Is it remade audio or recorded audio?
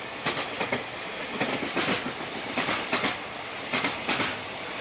recorded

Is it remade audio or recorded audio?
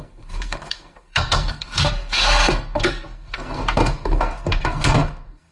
remade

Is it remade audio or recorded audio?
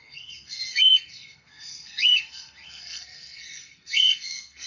remade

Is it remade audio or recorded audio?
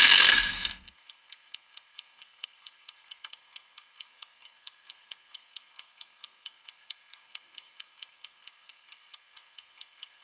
remade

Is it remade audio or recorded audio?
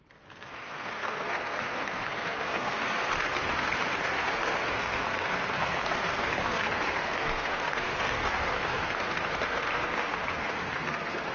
remade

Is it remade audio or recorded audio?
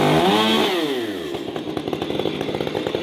recorded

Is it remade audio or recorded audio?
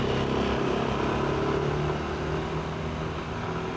recorded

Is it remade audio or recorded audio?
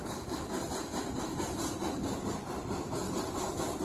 remade